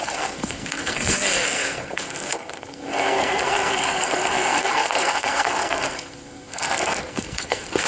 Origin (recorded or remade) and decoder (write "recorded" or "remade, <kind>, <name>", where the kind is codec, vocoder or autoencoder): remade, codec, SNAC